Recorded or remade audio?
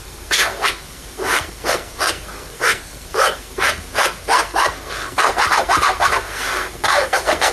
remade